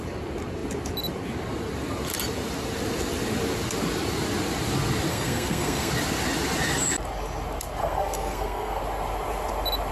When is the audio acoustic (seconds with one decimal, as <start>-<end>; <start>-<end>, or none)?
0.0-5.1; 5.9-7.8; 8.8-9.9